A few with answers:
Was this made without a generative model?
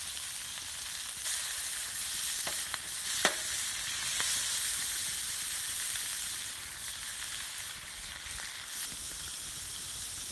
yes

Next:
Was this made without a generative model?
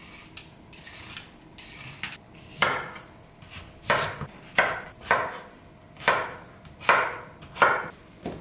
yes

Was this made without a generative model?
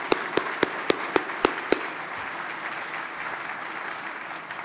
yes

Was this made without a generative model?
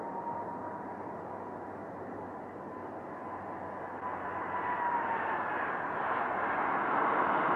yes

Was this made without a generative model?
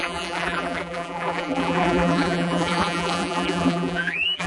no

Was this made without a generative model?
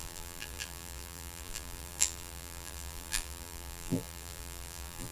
no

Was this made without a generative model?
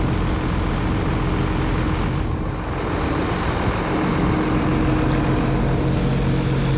yes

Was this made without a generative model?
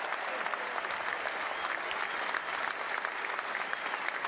no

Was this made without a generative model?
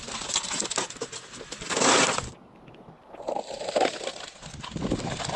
yes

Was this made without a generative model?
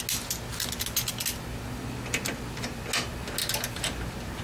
yes